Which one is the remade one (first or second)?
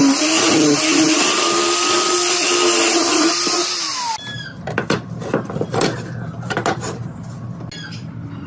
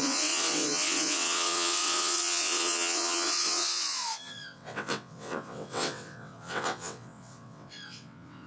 second